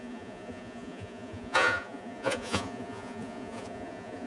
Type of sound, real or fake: fake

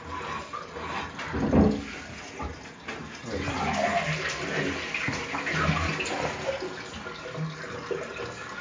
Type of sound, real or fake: real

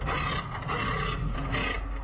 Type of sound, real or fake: real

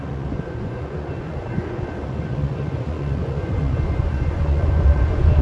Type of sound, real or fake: fake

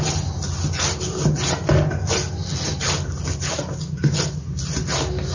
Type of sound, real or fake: real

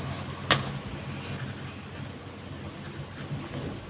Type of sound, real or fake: real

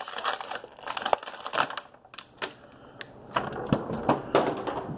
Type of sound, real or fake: real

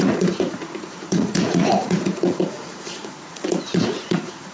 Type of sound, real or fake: fake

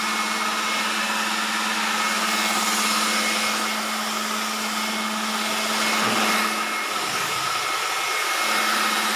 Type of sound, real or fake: real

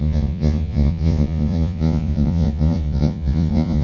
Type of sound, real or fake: fake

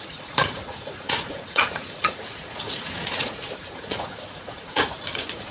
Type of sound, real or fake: fake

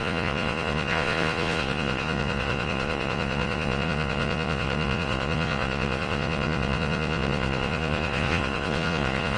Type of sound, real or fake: fake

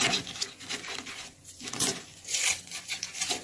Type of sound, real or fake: fake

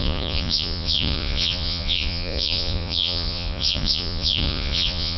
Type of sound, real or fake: fake